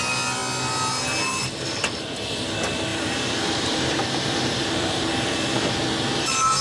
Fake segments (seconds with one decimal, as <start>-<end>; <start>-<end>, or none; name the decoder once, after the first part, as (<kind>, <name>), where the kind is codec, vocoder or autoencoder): 2.9-5.0 (vocoder, BigVGAN v2)